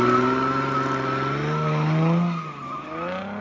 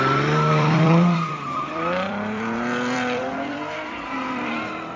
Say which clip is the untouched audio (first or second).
first